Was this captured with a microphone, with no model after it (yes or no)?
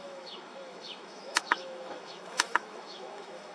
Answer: no